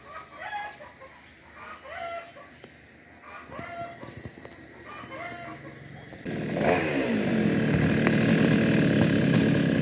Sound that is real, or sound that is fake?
real